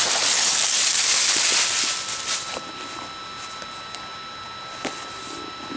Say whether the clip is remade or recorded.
recorded